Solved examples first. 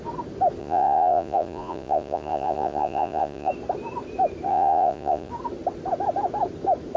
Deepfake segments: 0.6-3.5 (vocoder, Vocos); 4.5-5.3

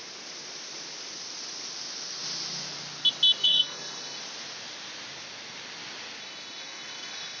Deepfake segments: 3.4-4.2 (codec, SNAC); 6.2-7.4

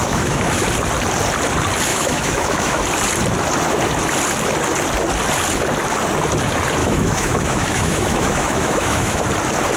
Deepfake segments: 0.0-0.6 (autoencoder, DAC-VAE); 1.9-2.8; 6.8-9.2